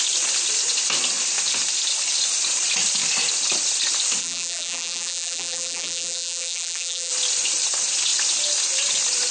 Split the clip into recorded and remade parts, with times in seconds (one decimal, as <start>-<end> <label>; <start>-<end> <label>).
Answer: 0.0-4.2 recorded; 4.2-7.1 remade; 7.1-9.3 recorded